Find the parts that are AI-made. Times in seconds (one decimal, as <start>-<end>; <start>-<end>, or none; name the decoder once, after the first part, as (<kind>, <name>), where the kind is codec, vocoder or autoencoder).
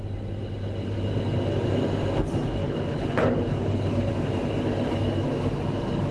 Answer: 2.6-4.1 (codec, HILCodec)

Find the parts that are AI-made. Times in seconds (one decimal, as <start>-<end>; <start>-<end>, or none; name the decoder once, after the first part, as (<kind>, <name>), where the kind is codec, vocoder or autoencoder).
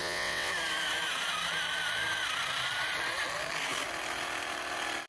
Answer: 0.0-0.5 (vocoder, WaveNeXt)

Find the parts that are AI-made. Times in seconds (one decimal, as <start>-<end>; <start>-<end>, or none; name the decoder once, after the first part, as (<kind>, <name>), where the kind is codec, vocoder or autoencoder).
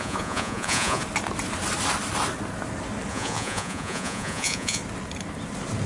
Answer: 0.0-1.0 (vocoder, Vocos); 3.1-4.8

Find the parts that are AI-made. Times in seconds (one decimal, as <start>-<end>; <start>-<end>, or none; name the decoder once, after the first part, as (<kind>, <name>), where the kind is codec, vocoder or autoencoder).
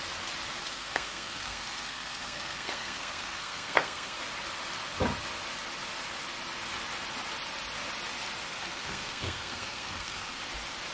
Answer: 0.6-4.2 (codec, SNAC); 8.5-10.4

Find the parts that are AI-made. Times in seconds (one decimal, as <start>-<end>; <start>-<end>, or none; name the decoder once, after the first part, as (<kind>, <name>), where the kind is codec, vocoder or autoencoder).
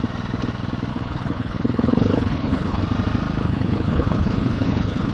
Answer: 0.9-2.8 (codec, HILCodec); 3.4-5.1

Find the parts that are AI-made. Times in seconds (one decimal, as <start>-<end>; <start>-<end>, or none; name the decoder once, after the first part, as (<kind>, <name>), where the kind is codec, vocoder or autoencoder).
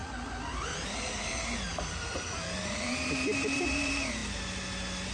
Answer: 0.5-4.2 (vocoder, BigVGAN v2)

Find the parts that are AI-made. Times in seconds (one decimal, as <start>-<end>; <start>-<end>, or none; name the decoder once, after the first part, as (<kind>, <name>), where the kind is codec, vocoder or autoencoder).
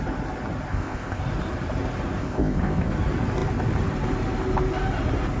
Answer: 0.7-1.2 (codec, ZipCodec); 2.2-2.9